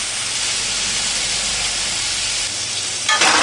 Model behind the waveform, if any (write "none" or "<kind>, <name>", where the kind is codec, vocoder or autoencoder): none